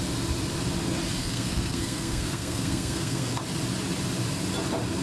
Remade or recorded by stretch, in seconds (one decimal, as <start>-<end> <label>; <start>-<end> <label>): 0.0-1.2 recorded; 1.2-3.4 remade; 3.4-5.0 recorded